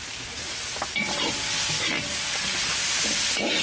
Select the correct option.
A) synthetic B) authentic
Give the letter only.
B